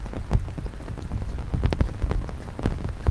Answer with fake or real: real